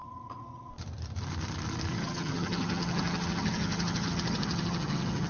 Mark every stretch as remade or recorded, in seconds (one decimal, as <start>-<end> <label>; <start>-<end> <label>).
0.0-0.7 remade; 0.7-1.9 recorded; 1.9-5.3 remade

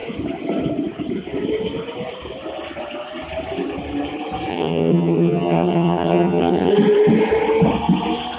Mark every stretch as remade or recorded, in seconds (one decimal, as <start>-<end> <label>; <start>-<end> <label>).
0.0-4.5 recorded; 4.5-6.7 remade; 6.7-8.4 recorded

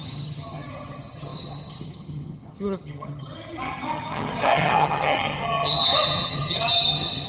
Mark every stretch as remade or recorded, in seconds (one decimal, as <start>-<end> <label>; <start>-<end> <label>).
0.0-7.3 remade

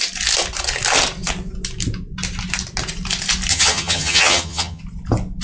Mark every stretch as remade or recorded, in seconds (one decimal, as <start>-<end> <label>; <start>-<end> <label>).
0.0-3.5 recorded; 3.5-4.8 remade; 4.8-5.4 recorded

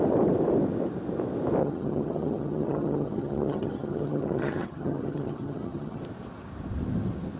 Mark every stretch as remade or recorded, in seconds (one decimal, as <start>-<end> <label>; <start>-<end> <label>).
0.0-1.6 recorded; 1.6-6.0 remade; 6.0-7.4 recorded

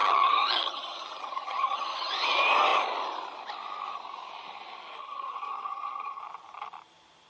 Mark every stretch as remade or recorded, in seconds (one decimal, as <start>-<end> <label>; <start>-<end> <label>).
0.0-2.1 remade; 2.1-5.0 recorded; 5.0-6.2 remade; 6.2-7.3 recorded

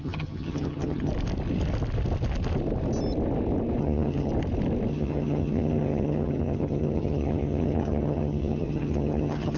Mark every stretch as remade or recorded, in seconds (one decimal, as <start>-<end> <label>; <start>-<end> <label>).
0.0-1.1 remade; 1.1-3.8 recorded; 3.8-4.3 remade; 4.3-4.9 recorded; 4.9-9.6 remade

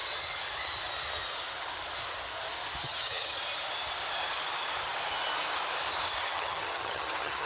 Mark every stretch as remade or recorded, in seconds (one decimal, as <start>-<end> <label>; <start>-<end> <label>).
0.0-2.8 recorded; 2.8-3.4 remade; 3.4-6.2 recorded; 6.2-7.5 remade